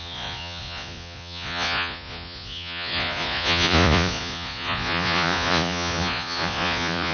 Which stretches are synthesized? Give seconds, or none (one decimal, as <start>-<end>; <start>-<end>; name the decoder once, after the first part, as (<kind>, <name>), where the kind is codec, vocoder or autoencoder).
0.0-7.1 (vocoder, Vocos)